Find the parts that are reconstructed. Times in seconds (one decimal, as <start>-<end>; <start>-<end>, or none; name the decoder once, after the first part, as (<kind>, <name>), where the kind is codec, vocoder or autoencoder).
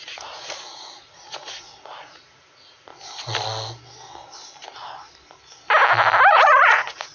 0.0-2.9 (vocoder, Vocos); 6.3-7.1